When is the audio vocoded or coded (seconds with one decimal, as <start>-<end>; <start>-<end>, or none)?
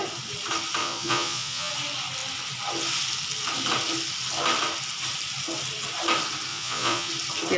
0.8-1.7; 6.5-7.1